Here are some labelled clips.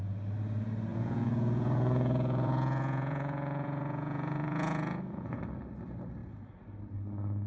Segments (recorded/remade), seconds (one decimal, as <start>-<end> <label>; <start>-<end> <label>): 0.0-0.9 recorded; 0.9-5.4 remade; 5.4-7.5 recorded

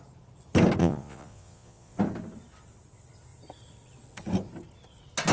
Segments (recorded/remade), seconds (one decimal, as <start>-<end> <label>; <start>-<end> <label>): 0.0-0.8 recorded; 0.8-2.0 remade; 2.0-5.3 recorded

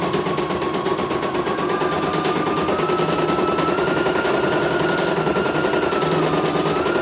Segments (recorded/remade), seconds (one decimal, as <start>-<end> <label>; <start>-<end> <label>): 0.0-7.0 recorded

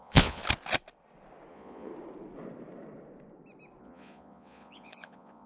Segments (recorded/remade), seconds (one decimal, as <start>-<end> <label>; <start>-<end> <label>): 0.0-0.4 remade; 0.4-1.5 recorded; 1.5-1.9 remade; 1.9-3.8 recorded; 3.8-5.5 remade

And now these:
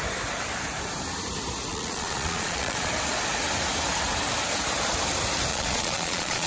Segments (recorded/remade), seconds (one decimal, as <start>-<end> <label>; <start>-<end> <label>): 0.0-1.7 recorded; 1.7-2.9 remade; 2.9-5.5 recorded; 5.5-6.5 remade

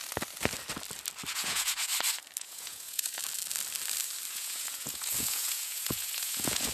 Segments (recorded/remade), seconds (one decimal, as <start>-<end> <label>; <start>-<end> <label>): 0.0-1.3 recorded; 1.3-1.9 remade; 1.9-2.4 recorded; 2.4-3.2 remade; 3.2-4.3 recorded; 4.3-6.7 remade

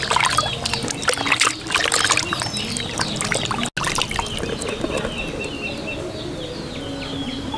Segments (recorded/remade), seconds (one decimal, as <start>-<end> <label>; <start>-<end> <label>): 0.0-7.6 recorded

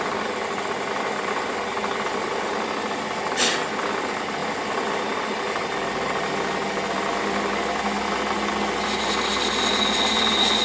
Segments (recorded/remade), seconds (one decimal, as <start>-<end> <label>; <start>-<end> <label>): 0.0-10.6 recorded